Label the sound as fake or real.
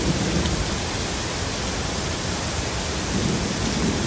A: real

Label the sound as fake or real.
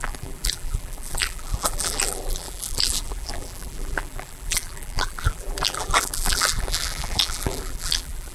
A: fake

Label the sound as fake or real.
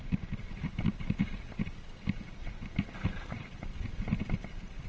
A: real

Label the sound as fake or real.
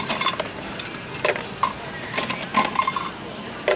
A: real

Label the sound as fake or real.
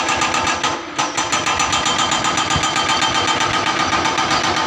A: real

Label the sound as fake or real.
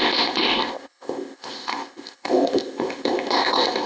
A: fake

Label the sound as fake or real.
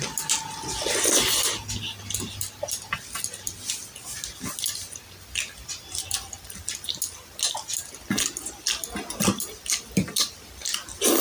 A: real